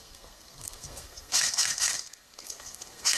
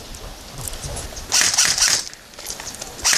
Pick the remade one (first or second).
first